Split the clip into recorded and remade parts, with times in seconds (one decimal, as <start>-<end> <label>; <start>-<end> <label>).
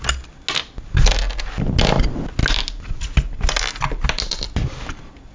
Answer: 0.0-5.3 recorded